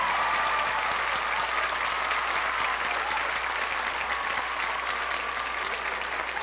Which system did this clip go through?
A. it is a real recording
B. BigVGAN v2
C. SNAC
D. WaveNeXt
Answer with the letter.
A